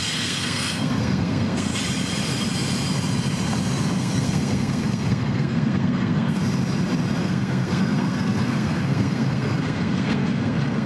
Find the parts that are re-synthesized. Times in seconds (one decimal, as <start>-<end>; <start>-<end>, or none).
0.0-1.7; 4.0-6.4; 7.2-10.9